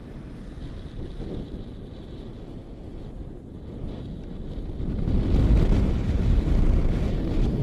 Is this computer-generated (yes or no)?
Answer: no